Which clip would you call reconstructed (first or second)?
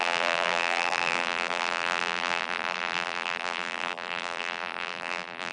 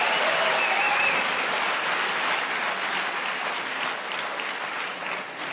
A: first